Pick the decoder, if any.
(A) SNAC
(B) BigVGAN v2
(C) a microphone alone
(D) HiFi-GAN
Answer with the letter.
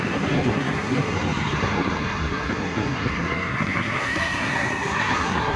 A